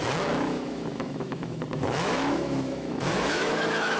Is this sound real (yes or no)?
no